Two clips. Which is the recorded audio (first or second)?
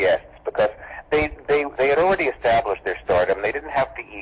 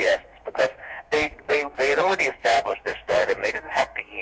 first